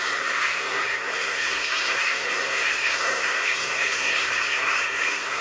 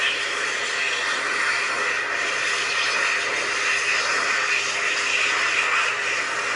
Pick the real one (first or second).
second